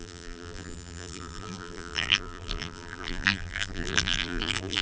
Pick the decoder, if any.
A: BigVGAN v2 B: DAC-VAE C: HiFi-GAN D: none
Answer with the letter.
A